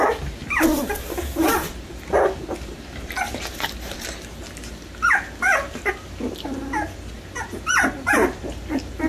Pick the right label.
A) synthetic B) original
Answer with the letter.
B